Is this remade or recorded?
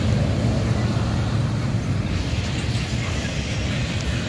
recorded